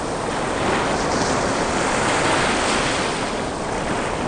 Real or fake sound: real